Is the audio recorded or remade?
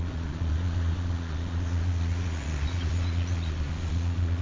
remade